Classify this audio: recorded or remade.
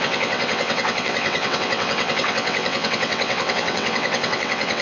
remade